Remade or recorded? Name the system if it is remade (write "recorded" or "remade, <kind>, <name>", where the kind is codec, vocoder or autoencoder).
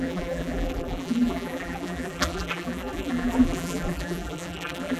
remade, vocoder, BigVGAN v2